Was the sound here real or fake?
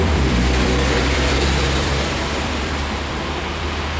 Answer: fake